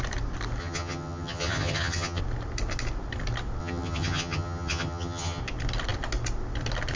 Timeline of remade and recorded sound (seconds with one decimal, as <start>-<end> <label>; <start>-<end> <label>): 0.0-0.6 recorded; 0.6-2.2 remade; 2.2-3.6 recorded; 3.6-5.4 remade; 5.4-7.0 recorded